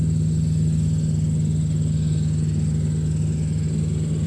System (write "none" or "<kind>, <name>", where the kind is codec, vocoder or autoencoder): none